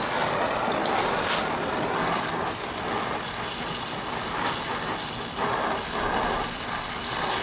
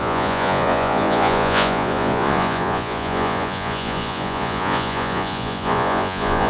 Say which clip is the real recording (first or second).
first